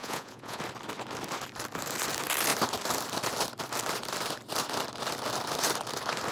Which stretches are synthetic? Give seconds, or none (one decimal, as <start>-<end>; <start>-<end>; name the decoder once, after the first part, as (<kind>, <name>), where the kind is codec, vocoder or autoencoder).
0.0-0.6 (vocoder, Vocos)